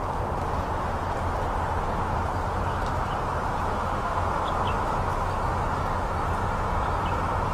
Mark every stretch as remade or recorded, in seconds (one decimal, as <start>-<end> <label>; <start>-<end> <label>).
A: 0.0-3.7 recorded; 3.7-4.2 remade; 4.2-7.5 recorded